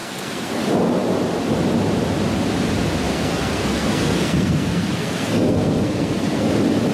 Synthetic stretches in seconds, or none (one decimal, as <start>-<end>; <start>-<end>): 0.0-0.6; 3.1-6.5

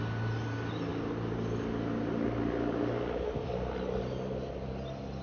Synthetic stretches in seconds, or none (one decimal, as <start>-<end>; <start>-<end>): none

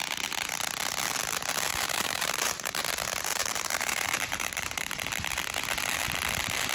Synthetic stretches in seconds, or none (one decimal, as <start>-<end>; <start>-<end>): 1.7-2.8; 3.3-5.0

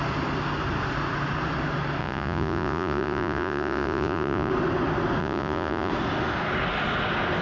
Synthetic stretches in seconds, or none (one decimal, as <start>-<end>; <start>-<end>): 2.0-4.5; 5.2-5.9

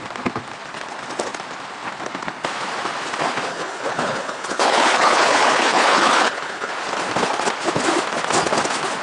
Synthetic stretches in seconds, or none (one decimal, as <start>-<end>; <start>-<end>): 3.5-6.7